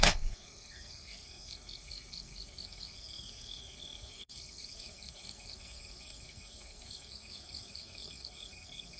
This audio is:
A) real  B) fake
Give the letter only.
B